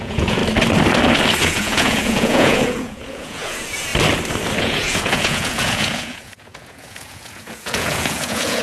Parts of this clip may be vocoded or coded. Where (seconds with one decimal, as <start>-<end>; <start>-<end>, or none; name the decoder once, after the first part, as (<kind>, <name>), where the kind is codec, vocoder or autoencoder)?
0.0-0.4 (vocoder, Vocos); 1.4-3.9; 4.6-8.6